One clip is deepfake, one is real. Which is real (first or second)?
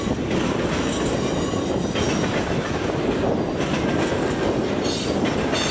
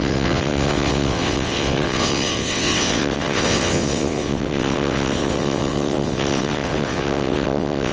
first